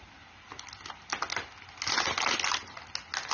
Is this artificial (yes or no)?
no